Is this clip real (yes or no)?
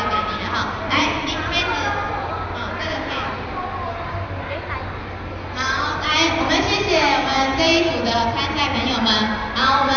yes